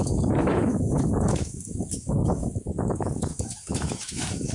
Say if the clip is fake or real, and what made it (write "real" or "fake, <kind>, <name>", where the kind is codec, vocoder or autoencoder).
fake, autoencoder, DAC-VAE